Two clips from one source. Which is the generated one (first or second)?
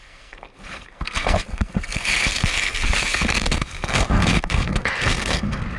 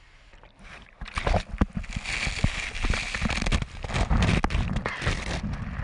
first